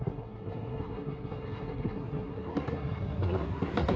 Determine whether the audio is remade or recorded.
remade